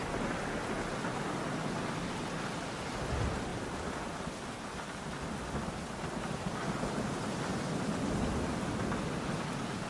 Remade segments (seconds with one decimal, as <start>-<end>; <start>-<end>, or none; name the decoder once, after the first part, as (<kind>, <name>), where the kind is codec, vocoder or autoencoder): none